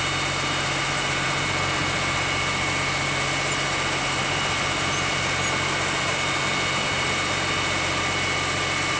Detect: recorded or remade recorded